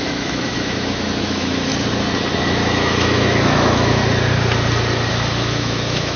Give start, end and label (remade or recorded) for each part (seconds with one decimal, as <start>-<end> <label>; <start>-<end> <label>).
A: 0.0-1.7 remade; 1.7-2.4 recorded; 2.4-4.0 remade; 4.0-5.1 recorded; 5.1-6.2 remade